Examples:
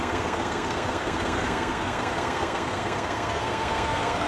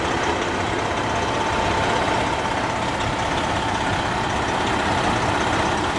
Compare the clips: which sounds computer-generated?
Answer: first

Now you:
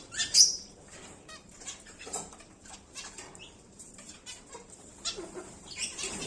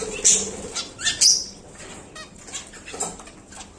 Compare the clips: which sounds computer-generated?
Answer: first